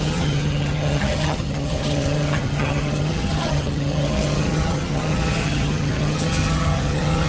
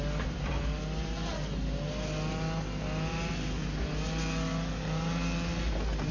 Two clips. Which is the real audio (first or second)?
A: second